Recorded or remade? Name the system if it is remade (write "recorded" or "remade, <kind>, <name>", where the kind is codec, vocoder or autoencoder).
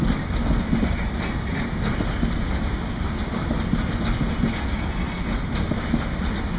recorded